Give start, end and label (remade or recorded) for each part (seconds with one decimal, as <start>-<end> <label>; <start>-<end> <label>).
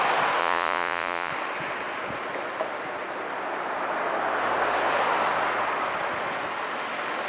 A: 0.0-0.4 recorded; 0.4-1.3 remade; 1.3-7.3 recorded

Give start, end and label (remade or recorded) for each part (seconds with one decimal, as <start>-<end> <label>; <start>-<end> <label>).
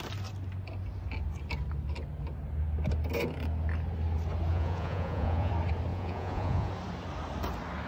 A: 0.0-4.5 recorded; 4.5-5.5 remade; 5.5-5.9 recorded; 5.9-6.7 remade; 6.7-7.9 recorded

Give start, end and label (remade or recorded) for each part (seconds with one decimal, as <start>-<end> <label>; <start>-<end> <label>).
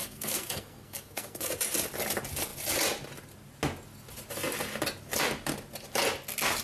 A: 0.0-1.5 remade; 1.5-6.6 recorded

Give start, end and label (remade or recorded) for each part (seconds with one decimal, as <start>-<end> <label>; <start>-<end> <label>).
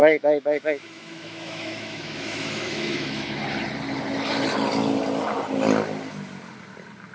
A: 0.0-3.4 remade; 3.4-7.1 recorded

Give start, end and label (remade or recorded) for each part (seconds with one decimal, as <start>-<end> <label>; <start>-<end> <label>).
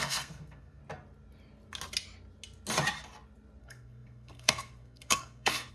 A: 0.0-0.8 remade; 0.8-3.6 recorded; 3.6-5.7 remade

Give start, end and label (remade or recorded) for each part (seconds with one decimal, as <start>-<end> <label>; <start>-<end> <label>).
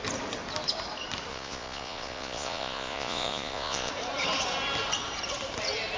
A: 0.0-1.3 recorded; 1.3-3.9 remade; 3.9-6.0 recorded